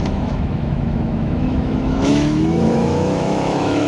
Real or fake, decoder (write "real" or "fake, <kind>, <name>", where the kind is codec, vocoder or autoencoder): fake, autoencoder, DAC-VAE